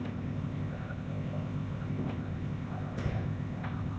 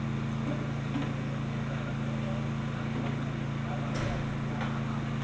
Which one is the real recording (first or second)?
second